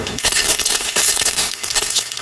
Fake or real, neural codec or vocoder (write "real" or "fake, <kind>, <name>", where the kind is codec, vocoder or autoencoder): fake, codec, SNAC